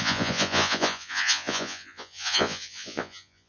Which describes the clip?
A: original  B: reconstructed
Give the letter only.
B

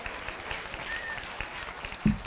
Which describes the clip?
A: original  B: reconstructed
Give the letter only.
A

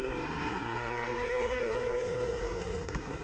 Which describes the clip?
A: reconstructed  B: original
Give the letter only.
A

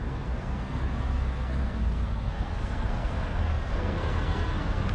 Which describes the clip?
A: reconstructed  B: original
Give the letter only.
A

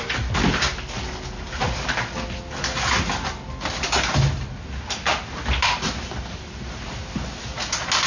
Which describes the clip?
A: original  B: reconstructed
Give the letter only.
A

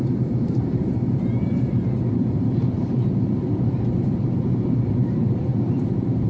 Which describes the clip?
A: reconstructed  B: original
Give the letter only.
A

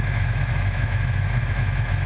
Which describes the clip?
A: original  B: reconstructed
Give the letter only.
B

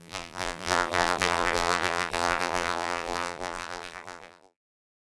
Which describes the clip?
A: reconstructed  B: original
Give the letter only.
A